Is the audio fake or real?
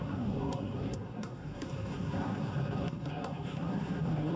fake